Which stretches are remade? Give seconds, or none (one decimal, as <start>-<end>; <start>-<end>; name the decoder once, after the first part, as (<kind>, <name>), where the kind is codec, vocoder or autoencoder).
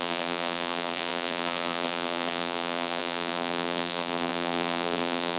0.0-5.4 (vocoder, BigVGAN v2)